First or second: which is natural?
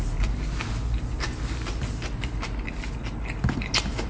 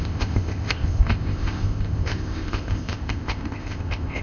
first